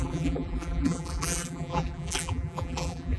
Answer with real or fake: fake